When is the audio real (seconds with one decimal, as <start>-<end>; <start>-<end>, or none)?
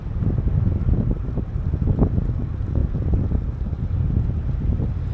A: 0.0-2.8; 4.5-5.1